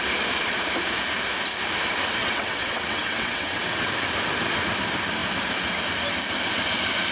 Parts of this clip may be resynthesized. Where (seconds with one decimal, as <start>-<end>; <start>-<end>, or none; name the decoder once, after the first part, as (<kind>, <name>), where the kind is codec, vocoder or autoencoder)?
2.2-3.9 (vocoder, WaveNeXt)